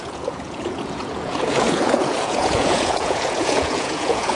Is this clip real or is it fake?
fake